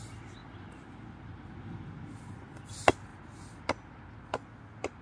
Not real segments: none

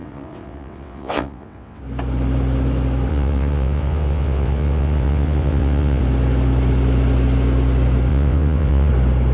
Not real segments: 0.0-1.8 (vocoder, WaveNeXt); 3.1-6.0; 8.1-8.9

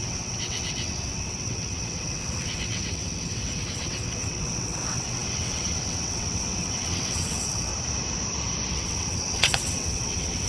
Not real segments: 0.0-7.7 (vocoder, WaveNeXt); 8.7-10.5

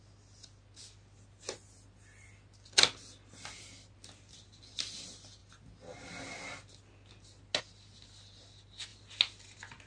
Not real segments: none

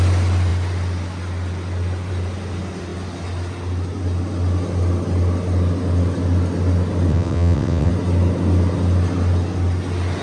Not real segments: 7.1-7.9 (vocoder, WaveNeXt)

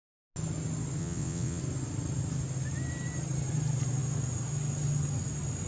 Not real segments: 1.0-1.6 (vocoder, WaveNeXt)